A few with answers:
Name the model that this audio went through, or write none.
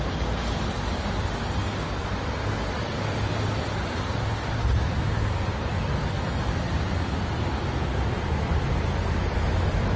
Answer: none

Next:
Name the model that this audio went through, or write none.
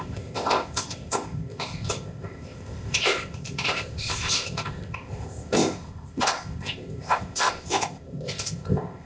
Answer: codec, ZipCodec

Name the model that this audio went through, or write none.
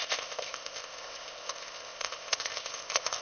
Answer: codec, ZipCodec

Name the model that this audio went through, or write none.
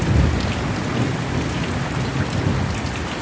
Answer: none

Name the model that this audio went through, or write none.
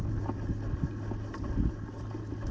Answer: none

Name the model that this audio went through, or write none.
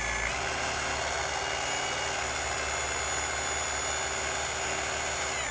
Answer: none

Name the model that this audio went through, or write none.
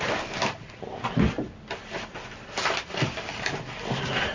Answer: none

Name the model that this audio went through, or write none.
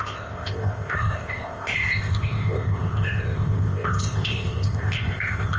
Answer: codec, ZipCodec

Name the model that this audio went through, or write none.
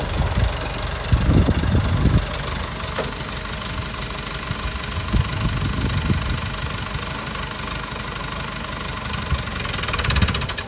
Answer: none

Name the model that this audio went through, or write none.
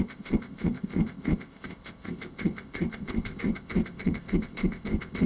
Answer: codec, ZipCodec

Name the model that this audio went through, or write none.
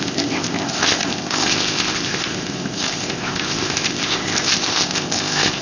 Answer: codec, ZipCodec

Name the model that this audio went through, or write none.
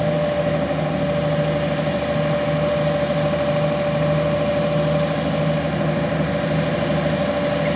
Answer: none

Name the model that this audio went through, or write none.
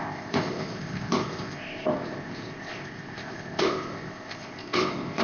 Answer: codec, ZipCodec